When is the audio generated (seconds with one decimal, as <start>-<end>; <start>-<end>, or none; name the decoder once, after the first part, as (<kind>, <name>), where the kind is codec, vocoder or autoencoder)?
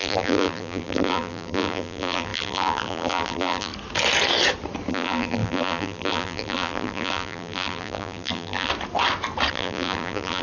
0.0-3.7 (vocoder, BigVGAN v2); 4.9-8.7; 9.5-10.4